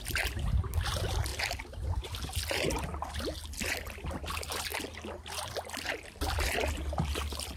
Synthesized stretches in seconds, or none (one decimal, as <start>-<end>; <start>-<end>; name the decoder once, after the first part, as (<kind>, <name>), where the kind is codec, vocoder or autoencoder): none